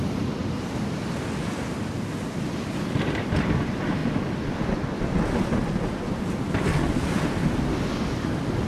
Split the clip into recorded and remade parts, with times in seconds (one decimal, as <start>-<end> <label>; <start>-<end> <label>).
0.0-8.7 recorded